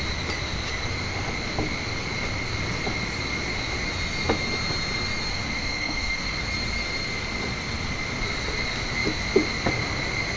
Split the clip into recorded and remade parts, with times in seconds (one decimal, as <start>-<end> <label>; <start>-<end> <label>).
0.0-5.3 recorded; 5.3-6.4 remade; 6.4-10.4 recorded